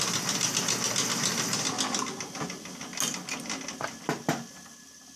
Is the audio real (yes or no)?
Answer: yes